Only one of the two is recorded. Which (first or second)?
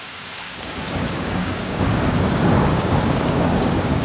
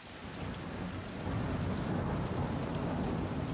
second